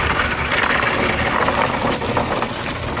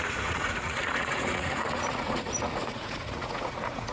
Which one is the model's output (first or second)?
second